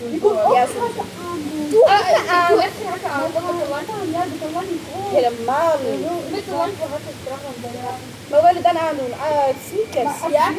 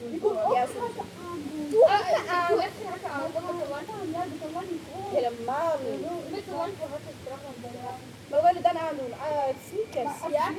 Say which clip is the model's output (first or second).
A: second